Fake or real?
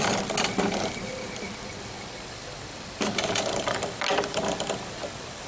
real